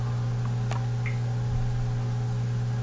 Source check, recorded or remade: recorded